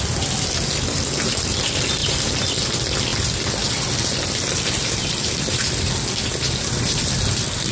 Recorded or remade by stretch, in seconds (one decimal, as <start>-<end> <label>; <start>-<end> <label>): 0.0-2.0 recorded; 2.0-2.5 remade; 2.5-7.7 recorded